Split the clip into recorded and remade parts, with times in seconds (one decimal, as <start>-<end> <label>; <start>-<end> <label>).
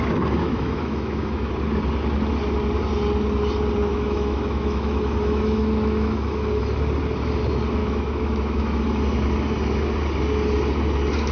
0.0-0.4 recorded; 0.4-1.5 remade; 1.5-3.9 recorded; 3.9-6.6 remade; 6.6-7.8 recorded; 7.8-8.8 remade; 8.8-11.3 recorded